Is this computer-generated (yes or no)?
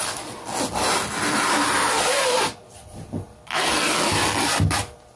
no